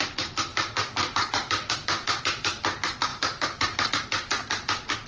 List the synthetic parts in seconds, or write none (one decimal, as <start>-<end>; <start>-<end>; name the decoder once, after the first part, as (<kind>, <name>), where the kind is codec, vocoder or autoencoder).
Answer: 0.5-2.2 (vocoder, BigVGAN v2); 3.1-3.9